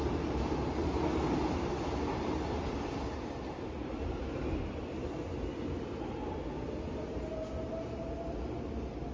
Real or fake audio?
real